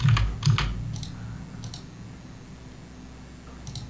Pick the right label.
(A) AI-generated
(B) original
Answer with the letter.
B